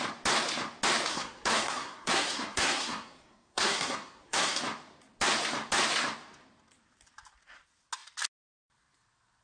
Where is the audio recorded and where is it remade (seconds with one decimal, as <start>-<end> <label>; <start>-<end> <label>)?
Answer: 0.0-1.1 recorded; 1.1-4.6 remade; 4.6-9.4 recorded